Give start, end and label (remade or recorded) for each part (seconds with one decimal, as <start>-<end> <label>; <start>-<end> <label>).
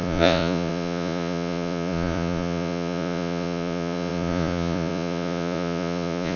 0.0-6.4 remade